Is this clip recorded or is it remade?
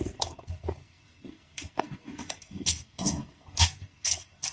remade